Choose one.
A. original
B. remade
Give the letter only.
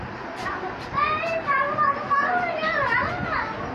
A